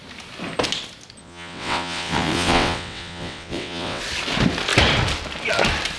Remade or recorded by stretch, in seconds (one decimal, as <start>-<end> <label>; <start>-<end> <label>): 0.0-1.2 recorded; 1.2-4.0 remade; 4.0-6.0 recorded